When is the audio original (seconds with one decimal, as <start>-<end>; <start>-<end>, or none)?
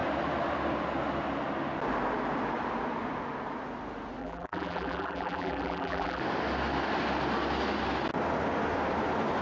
0.0-4.2; 6.2-9.4